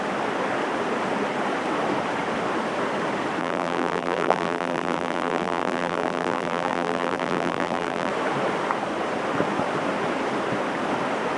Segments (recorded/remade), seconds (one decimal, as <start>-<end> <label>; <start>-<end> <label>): 0.0-3.4 recorded; 3.4-8.1 remade; 8.1-11.4 recorded